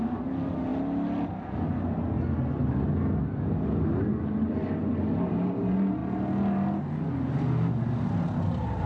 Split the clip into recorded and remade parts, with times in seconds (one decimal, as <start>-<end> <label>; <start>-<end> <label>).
0.0-8.9 recorded